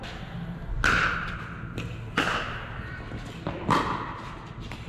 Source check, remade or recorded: recorded